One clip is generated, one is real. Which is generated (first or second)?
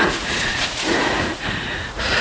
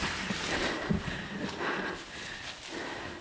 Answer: first